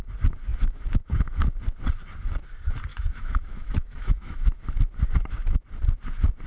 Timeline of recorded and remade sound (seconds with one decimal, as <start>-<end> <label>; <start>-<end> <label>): 0.0-0.5 recorded; 0.5-1.6 remade; 1.6-2.9 recorded; 2.9-4.8 remade; 4.8-6.5 recorded